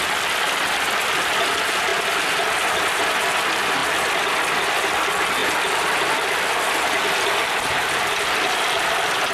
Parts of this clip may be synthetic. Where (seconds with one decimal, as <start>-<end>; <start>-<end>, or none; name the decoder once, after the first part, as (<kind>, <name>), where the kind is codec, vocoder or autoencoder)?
none